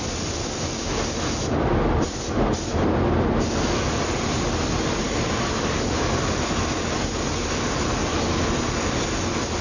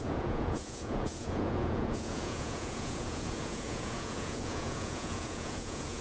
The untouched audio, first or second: first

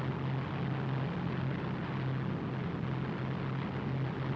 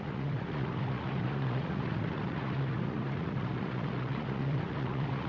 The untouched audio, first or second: first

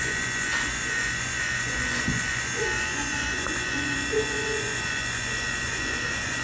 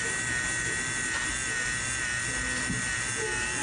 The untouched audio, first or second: second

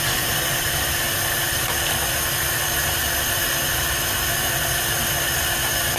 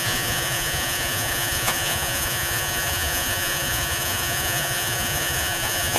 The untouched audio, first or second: first